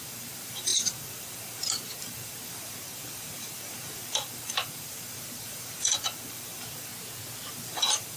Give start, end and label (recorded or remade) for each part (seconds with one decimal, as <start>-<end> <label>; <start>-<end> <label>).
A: 0.0-6.9 remade; 6.9-7.5 recorded; 7.5-8.2 remade